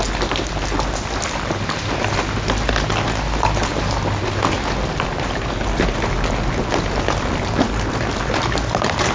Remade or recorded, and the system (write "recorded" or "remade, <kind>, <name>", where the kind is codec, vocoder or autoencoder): recorded